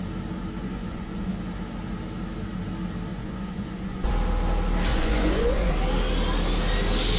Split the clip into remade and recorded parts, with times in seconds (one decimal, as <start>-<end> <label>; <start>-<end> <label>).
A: 0.0-0.6 recorded; 0.6-1.3 remade; 1.3-3.1 recorded; 3.1-4.1 remade; 4.1-4.9 recorded; 4.9-5.7 remade; 5.7-7.2 recorded